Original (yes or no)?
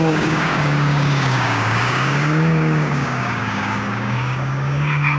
no